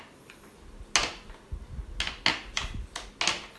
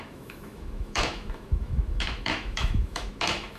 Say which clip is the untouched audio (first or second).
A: first